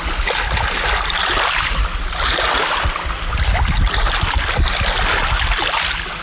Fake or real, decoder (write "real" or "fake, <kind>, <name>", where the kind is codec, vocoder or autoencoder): real